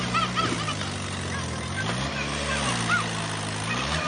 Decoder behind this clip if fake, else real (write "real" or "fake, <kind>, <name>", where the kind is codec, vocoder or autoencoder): real